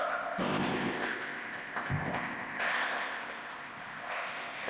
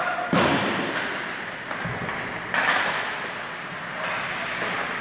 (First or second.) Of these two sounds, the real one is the second